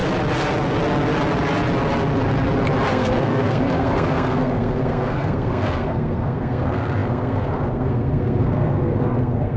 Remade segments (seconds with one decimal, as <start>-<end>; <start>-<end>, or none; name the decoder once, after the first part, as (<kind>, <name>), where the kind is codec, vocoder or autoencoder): 2.9-9.6 (codec, SNAC)